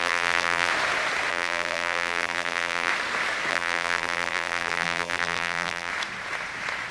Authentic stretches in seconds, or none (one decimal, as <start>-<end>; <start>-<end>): 0.7-1.3; 2.9-3.5; 5.9-6.9